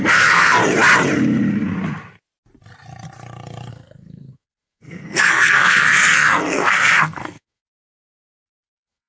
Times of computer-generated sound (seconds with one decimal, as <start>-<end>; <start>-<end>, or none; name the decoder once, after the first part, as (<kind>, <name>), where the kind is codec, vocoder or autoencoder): 0.0-0.6 (codec, SNAC); 3.7-9.1